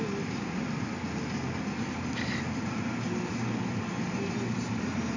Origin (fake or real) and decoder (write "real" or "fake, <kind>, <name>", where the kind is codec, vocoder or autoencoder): real